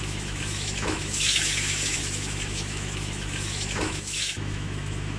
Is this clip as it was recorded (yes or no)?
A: no